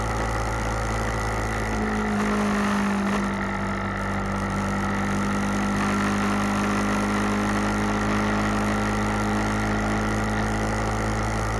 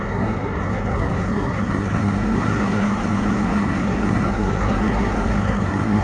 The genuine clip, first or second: first